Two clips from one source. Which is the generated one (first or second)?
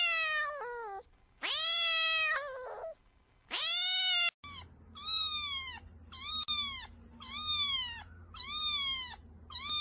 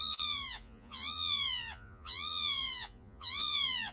second